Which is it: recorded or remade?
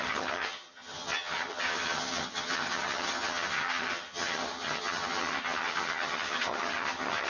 remade